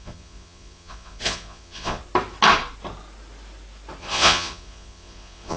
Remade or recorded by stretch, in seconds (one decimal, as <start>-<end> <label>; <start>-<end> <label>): 0.0-2.0 remade; 2.0-4.0 recorded; 4.0-5.6 remade